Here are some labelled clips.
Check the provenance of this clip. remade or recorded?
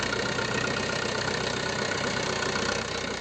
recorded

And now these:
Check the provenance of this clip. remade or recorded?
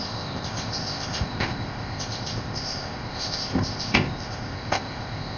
remade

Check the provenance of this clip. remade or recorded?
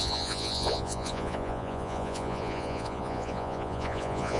remade